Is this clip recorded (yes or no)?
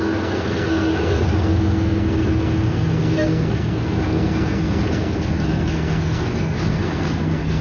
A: no